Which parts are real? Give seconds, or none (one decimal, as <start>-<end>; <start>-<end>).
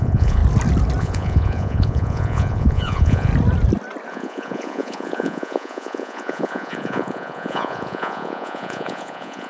0.4-1.0; 3.3-4.1